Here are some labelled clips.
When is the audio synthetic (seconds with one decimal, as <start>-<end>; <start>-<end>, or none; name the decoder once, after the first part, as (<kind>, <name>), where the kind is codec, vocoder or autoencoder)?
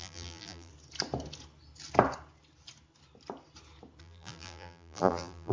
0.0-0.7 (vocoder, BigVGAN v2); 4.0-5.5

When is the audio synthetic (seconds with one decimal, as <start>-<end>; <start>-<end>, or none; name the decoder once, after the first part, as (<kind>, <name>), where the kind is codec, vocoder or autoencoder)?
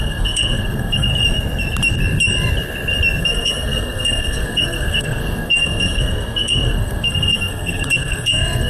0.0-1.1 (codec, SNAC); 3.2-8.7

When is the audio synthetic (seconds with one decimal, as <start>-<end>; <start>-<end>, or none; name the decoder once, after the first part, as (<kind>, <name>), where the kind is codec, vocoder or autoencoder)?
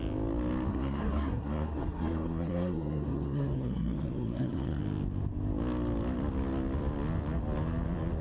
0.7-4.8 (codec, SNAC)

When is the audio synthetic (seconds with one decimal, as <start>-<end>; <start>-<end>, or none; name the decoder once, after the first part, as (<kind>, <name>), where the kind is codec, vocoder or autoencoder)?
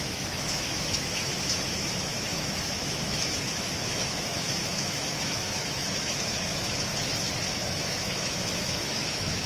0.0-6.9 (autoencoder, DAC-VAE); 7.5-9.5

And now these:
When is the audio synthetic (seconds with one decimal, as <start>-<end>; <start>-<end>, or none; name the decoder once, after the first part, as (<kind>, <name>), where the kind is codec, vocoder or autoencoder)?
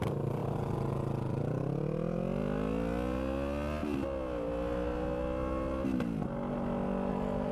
none